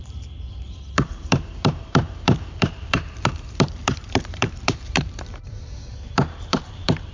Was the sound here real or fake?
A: fake